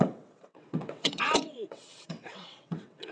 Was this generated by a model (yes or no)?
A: yes